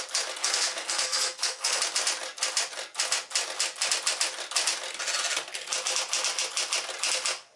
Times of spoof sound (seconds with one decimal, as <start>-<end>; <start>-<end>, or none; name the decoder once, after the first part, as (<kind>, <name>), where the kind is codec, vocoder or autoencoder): 0.4-1.8 (codec, SNAC)